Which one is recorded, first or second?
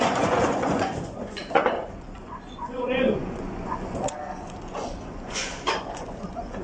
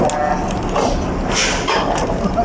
second